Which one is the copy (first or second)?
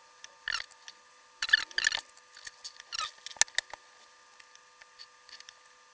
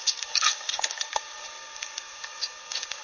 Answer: second